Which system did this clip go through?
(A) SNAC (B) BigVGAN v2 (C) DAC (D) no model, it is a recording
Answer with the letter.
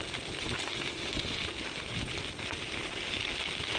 D